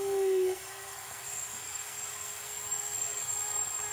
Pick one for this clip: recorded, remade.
remade